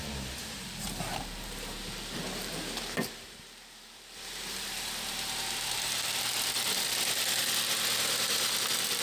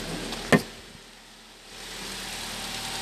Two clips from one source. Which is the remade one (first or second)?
first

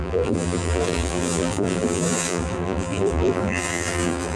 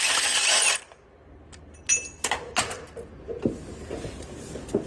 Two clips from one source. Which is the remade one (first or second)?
first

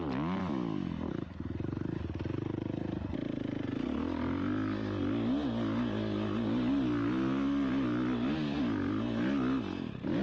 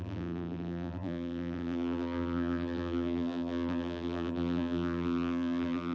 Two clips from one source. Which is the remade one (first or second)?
second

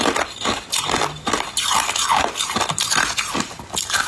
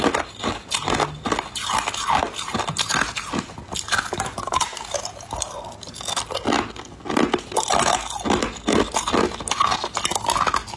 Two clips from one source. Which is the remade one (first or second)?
first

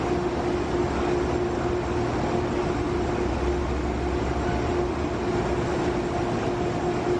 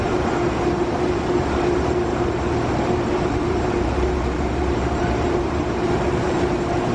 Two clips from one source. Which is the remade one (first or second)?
second